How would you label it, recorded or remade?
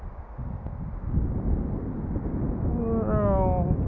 recorded